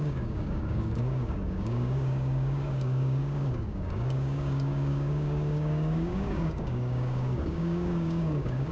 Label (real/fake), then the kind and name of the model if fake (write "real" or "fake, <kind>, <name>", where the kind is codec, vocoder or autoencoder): fake, codec, DAC